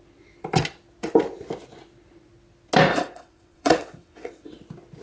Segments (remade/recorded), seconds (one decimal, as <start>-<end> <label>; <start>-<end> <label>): 0.0-2.9 recorded; 2.9-4.6 remade; 4.6-5.0 recorded

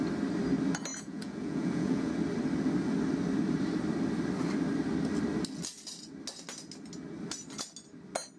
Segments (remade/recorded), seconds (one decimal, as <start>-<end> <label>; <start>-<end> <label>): 0.0-0.9 recorded; 0.9-2.1 remade; 2.1-8.4 recorded

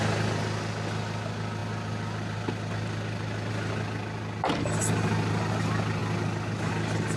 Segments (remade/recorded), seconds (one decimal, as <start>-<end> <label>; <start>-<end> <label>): 0.0-7.2 recorded